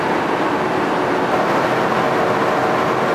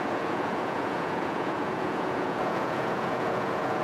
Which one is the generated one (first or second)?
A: second